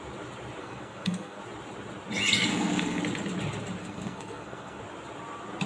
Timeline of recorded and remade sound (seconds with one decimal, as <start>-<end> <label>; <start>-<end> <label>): 0.0-0.6 recorded; 0.6-1.4 remade; 1.4-2.5 recorded; 2.5-3.0 remade; 3.0-3.8 recorded; 3.8-4.8 remade; 4.8-5.7 recorded